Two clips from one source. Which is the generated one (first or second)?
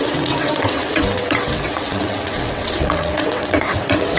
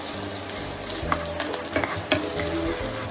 first